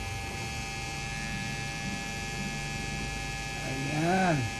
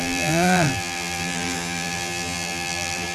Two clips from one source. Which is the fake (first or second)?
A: second